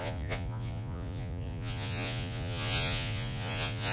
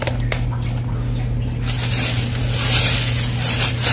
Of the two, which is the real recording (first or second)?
second